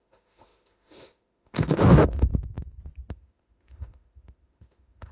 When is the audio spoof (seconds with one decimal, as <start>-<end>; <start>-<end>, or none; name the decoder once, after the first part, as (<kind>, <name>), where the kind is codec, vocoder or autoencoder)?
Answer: 0.0-2.3 (autoencoder, DAC-VAE); 3.1-5.1